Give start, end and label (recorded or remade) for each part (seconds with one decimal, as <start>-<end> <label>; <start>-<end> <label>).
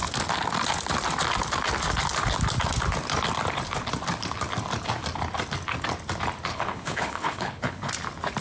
0.0-6.5 recorded; 6.5-7.9 remade; 7.9-8.4 recorded